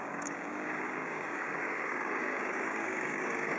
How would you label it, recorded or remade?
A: remade